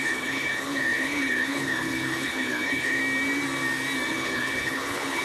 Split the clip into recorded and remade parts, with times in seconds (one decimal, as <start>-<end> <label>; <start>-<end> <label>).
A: 0.0-3.0 remade; 3.0-4.1 recorded; 4.1-5.2 remade